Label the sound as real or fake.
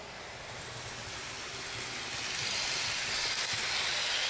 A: real